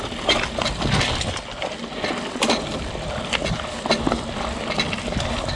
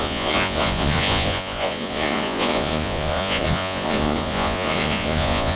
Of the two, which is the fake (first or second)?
second